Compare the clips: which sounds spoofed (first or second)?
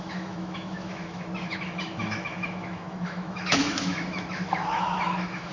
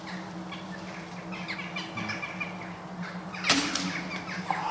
first